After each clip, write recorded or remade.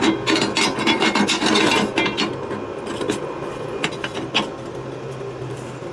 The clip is recorded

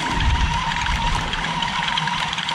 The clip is remade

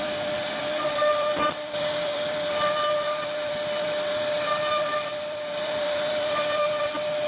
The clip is remade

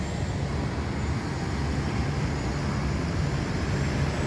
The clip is recorded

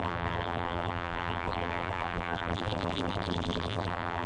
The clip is remade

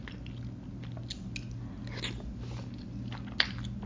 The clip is recorded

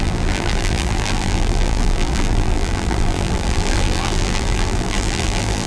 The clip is remade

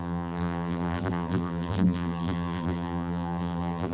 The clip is remade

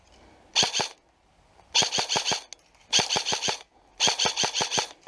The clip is recorded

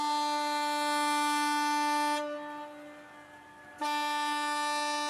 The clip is recorded